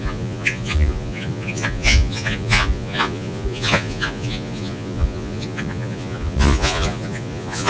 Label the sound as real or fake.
fake